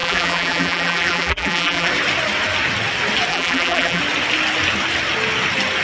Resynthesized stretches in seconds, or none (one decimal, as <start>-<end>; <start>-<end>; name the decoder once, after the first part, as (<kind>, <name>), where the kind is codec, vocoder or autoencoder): 0.0-1.9 (vocoder, BigVGAN v2); 3.3-4.0

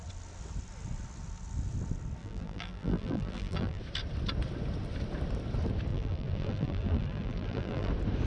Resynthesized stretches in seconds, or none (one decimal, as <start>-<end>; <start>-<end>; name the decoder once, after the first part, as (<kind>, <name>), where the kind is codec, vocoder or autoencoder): 2.2-3.8 (vocoder, BigVGAN v2); 5.9-7.9

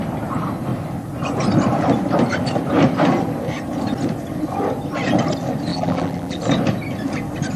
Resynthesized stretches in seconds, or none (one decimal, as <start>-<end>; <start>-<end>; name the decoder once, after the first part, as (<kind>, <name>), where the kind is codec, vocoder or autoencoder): 5.7-6.4 (vocoder, BigVGAN v2)

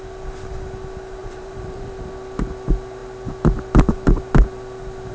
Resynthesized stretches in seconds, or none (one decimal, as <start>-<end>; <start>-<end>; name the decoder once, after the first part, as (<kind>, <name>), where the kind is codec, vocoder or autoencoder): 1.2-2.1 (vocoder, BigVGAN v2)